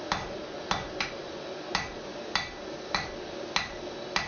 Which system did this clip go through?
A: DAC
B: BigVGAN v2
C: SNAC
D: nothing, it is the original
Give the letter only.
D